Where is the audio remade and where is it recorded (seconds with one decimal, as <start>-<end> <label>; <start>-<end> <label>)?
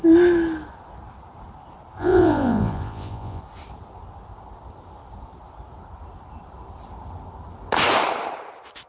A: 0.0-2.0 recorded; 2.0-3.4 remade; 3.4-8.9 recorded